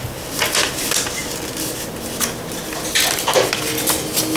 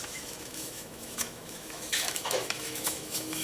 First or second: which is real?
first